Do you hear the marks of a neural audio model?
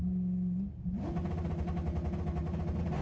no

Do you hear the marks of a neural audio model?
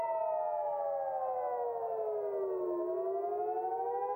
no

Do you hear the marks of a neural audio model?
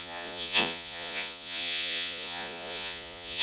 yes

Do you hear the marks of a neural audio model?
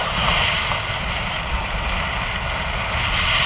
no